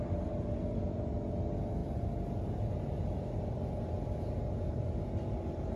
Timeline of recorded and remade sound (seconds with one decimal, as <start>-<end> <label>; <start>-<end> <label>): 0.0-5.8 recorded